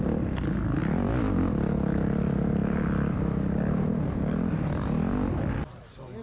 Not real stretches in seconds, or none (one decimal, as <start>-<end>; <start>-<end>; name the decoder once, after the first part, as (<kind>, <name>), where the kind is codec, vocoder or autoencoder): none